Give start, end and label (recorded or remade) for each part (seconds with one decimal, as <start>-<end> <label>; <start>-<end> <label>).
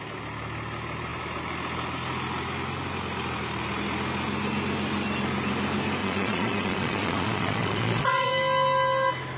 0.0-6.0 recorded; 6.0-8.3 remade; 8.3-9.4 recorded